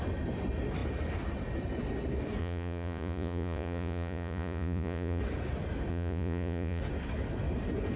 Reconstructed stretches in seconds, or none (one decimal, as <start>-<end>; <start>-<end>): 2.4-5.2; 5.9-6.8